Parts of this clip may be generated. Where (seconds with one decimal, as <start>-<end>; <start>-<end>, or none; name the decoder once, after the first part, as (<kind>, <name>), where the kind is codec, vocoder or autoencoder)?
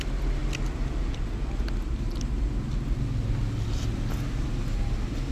none